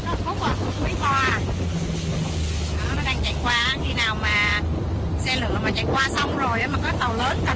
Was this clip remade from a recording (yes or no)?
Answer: no